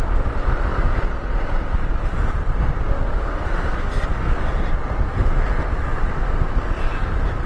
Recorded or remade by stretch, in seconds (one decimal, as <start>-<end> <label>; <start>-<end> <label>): 0.0-0.7 recorded; 0.7-1.9 remade; 1.9-7.5 recorded